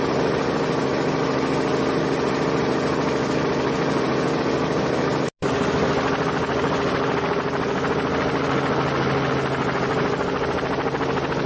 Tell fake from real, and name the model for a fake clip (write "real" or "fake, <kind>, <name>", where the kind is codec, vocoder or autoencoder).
real